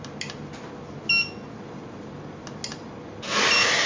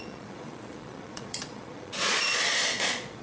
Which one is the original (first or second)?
first